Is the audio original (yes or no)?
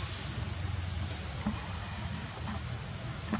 yes